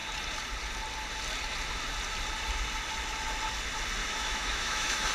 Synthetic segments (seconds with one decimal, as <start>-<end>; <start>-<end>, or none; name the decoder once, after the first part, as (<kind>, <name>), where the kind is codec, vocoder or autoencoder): 4.0-5.1 (autoencoder, DAC-VAE)